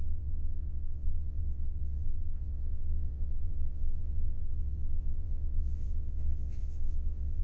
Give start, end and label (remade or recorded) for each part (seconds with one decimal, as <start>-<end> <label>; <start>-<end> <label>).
0.0-7.4 remade